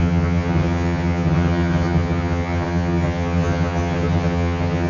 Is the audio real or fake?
fake